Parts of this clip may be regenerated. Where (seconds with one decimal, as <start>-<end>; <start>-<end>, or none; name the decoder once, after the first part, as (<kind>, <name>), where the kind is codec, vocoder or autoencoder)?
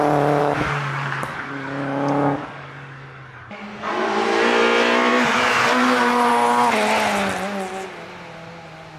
0.4-3.6 (codec, DAC)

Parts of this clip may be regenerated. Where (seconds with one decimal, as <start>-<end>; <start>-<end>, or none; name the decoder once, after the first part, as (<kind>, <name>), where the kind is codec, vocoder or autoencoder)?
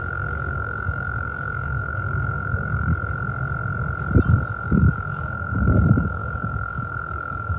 0.0-2.9 (codec, DAC); 4.6-7.6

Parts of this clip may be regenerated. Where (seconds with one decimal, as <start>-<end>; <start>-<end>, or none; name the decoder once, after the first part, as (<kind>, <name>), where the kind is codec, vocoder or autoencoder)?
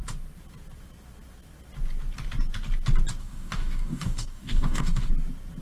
3.2-5.1 (codec, DAC)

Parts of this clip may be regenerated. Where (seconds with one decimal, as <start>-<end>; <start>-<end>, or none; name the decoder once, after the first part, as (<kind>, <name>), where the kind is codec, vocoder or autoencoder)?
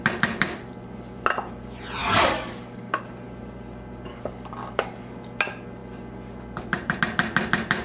2.0-3.0 (codec, DAC); 4.1-5.1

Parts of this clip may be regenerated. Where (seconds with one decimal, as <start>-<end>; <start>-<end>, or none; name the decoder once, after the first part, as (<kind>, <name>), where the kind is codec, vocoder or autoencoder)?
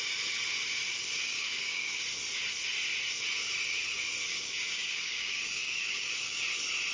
1.3-2.0 (codec, DAC); 4.3-6.4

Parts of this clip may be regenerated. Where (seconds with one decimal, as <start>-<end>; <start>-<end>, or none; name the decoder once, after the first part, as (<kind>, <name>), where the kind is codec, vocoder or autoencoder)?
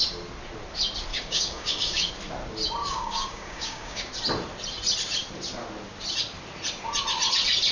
1.1-2.1 (codec, DAC); 2.8-4.1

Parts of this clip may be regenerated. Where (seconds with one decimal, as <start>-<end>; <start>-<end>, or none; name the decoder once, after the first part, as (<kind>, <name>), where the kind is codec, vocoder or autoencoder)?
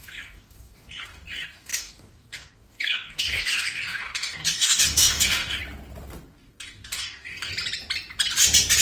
0.0-5.6 (codec, DAC); 6.3-7.5